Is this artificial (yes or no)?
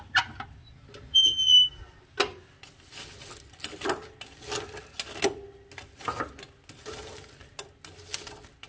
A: no